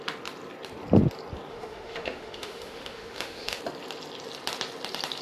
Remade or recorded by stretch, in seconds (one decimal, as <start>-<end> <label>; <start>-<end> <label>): 0.0-1.5 recorded; 1.5-3.6 remade; 3.6-5.2 recorded